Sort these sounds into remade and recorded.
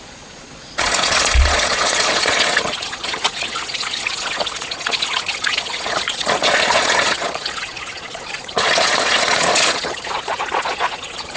remade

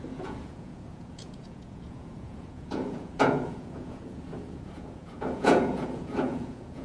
remade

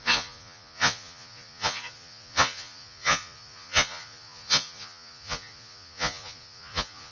remade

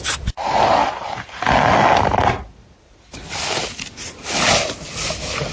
recorded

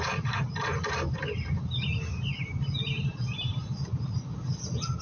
recorded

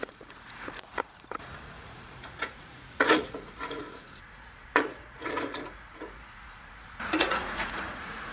remade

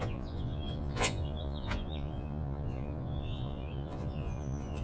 remade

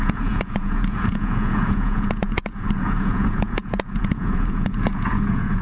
remade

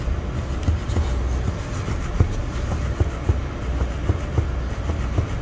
recorded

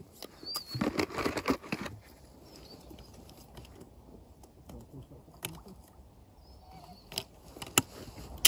recorded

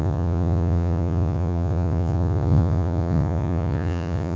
remade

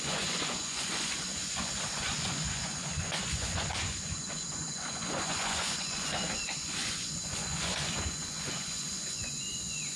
remade